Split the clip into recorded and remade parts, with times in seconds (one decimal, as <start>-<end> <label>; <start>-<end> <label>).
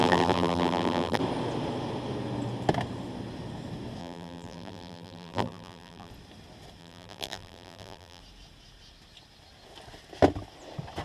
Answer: 0.0-1.2 remade; 1.2-4.0 recorded; 4.0-6.1 remade; 6.1-6.8 recorded; 6.8-8.2 remade; 8.2-11.0 recorded